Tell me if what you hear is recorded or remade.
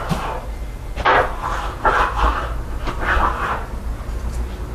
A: recorded